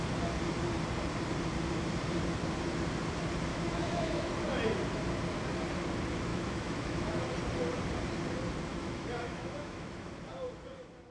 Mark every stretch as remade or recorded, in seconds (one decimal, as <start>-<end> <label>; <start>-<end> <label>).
0.0-3.5 recorded; 3.5-4.3 remade; 4.3-6.3 recorded; 6.3-7.2 remade; 7.2-8.7 recorded; 8.7-10.1 remade; 10.1-11.1 recorded